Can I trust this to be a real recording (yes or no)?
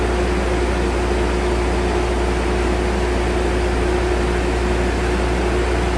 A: yes